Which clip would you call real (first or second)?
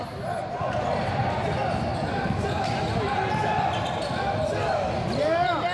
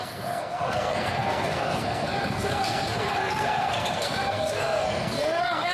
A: first